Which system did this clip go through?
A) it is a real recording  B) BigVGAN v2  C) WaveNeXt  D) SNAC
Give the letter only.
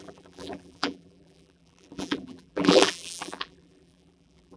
B